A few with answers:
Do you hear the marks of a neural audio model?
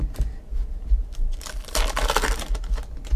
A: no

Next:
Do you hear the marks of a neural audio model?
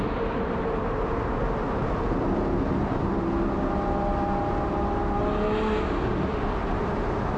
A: no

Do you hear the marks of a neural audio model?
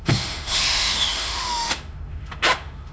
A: yes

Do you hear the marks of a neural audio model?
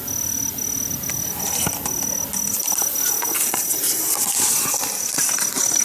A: no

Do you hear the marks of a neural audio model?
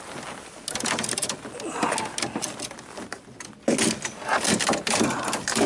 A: no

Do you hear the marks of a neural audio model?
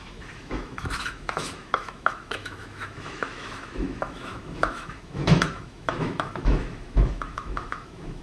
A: yes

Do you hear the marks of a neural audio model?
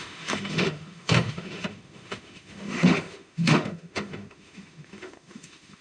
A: yes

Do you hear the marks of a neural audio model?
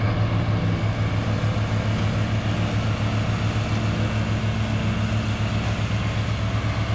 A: no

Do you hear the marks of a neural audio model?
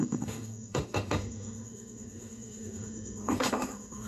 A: yes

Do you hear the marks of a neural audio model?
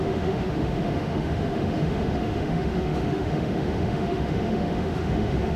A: yes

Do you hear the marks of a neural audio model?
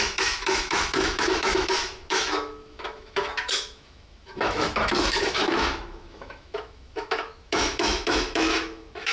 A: yes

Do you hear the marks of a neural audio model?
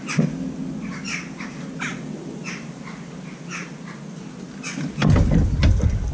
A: no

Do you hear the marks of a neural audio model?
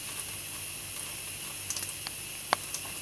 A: no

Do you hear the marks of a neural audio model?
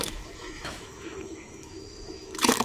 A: yes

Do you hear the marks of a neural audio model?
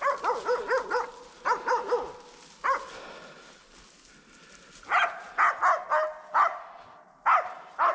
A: no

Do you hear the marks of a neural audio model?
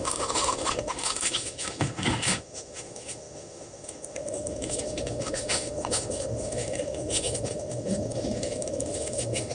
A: yes